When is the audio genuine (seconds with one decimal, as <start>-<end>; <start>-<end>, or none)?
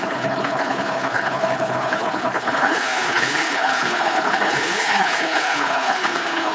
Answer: none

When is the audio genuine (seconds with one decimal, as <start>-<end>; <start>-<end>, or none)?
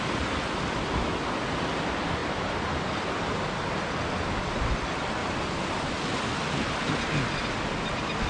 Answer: 0.0-2.2; 2.8-5.2; 5.9-8.3